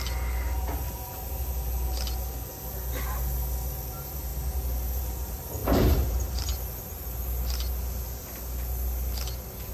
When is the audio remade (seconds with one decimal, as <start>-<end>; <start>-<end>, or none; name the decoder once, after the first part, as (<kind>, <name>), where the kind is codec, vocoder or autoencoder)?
none